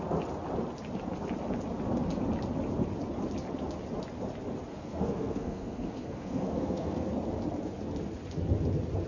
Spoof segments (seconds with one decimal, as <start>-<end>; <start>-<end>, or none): 4.7-7.1